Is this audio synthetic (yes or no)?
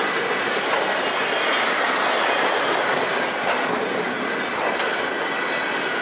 no